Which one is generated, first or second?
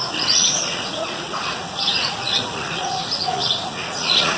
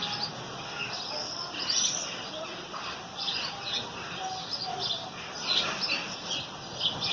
first